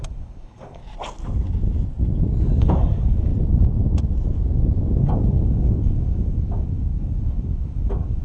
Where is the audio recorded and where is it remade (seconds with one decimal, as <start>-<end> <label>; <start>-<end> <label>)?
0.0-0.8 remade; 0.8-2.4 recorded; 2.4-3.3 remade; 3.3-5.0 recorded; 5.0-8.2 remade